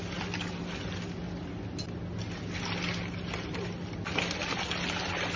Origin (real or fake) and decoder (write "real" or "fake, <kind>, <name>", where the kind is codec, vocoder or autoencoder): real